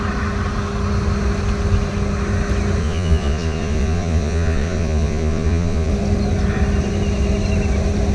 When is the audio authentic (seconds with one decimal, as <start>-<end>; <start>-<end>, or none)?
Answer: 0.0-2.8; 5.9-8.1